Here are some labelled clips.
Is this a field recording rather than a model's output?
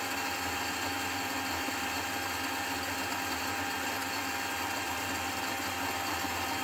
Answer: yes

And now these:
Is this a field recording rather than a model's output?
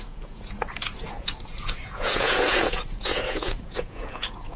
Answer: no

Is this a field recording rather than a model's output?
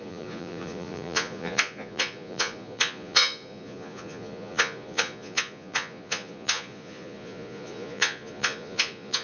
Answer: no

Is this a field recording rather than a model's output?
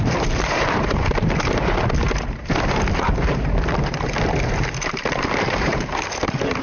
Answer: no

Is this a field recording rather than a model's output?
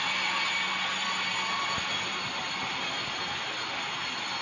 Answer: yes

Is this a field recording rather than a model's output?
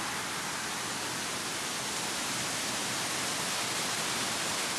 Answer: yes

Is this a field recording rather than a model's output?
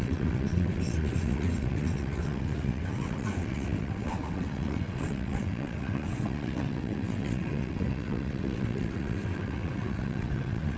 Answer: no